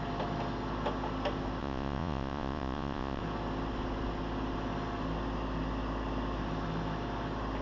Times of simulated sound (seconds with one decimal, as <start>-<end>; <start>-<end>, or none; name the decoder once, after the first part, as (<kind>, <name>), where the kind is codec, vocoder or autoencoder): 1.6-3.2 (vocoder, Vocos)

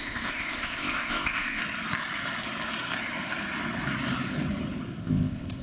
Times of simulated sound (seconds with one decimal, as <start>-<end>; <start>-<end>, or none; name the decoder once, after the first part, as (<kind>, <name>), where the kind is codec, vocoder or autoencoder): 0.0-1.6 (codec, ZipCodec); 5.0-5.6